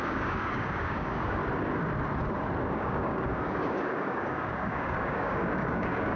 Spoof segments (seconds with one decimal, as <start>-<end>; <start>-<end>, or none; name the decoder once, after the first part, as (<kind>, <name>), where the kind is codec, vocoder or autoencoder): 0.0-1.4 (codec, DAC); 2.7-6.2